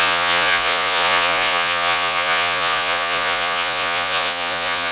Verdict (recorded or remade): remade